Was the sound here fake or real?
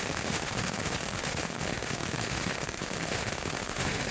fake